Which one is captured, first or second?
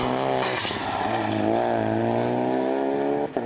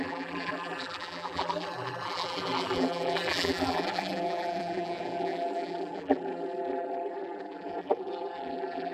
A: first